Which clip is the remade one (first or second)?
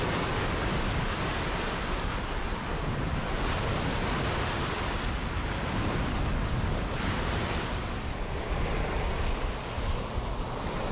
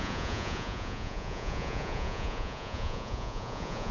second